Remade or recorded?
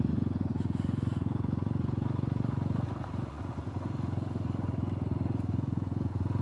remade